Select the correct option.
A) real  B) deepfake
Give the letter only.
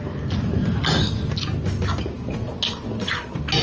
A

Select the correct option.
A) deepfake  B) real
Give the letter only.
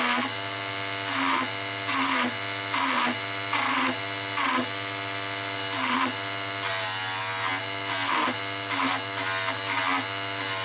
B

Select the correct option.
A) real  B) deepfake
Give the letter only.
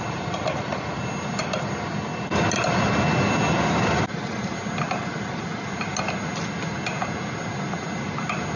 A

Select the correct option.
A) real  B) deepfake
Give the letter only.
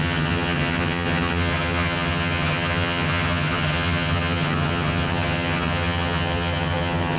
B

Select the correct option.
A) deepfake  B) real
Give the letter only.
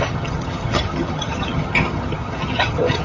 A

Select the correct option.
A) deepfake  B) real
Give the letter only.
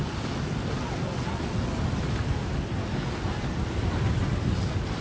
B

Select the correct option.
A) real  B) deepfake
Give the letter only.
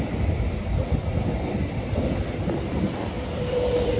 A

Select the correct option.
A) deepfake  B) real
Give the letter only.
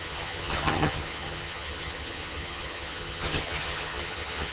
A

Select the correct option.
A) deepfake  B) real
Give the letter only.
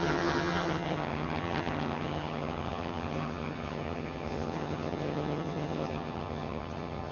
A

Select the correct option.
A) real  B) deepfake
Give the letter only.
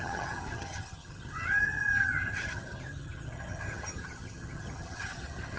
B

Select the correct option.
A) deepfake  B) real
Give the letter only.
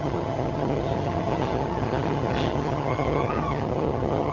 A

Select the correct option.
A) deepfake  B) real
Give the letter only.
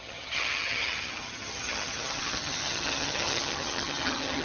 A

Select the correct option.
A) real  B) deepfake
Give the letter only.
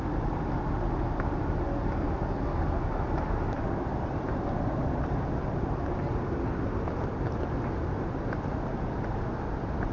A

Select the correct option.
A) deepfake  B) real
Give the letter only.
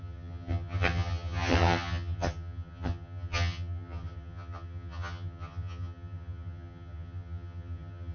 A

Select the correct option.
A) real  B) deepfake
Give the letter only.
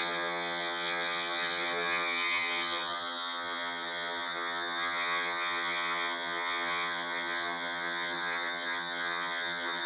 B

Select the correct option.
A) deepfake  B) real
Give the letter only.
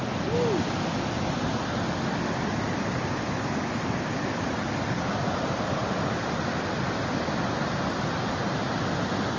B